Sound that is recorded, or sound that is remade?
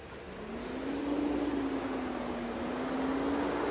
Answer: recorded